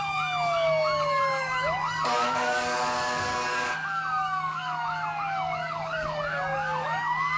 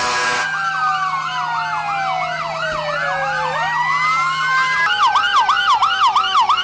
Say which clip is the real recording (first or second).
second